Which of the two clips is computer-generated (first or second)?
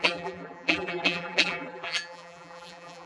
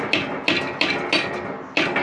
first